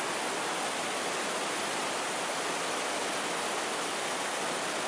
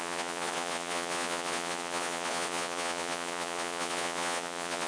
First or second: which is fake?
second